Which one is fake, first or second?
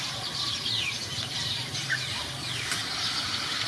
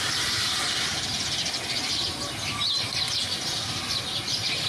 first